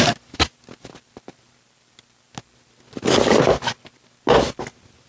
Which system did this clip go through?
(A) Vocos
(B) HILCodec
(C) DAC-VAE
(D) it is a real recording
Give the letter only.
D